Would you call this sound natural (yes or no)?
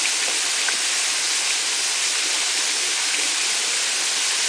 yes